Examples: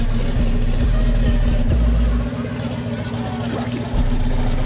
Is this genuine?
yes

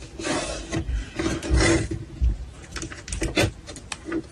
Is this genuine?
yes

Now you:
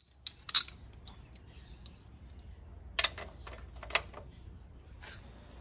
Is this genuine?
yes